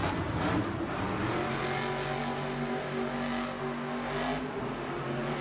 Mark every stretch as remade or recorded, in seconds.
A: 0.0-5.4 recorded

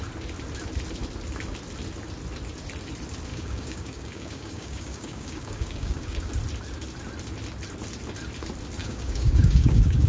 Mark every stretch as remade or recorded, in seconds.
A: 0.0-3.3 recorded; 3.3-6.3 remade; 6.3-8.8 recorded; 8.8-10.1 remade

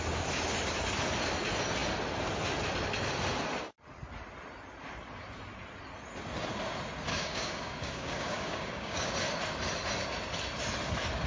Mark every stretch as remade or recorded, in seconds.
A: 0.0-7.1 recorded; 7.1-9.1 remade; 9.1-11.3 recorded

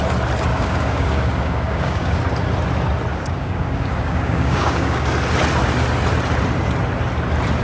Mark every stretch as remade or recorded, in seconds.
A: 0.0-0.5 recorded; 0.5-2.2 remade; 2.2-3.1 recorded; 3.1-5.1 remade; 5.1-7.6 recorded